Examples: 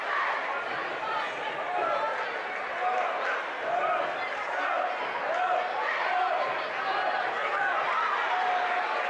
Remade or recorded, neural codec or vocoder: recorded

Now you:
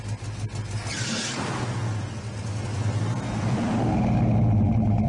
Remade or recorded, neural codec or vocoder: recorded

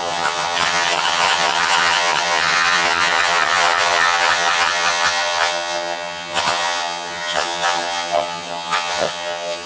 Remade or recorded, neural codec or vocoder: remade, vocoder, HiFi-GAN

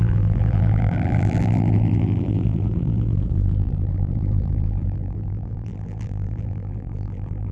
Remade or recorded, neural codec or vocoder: remade, vocoder, BigVGAN v2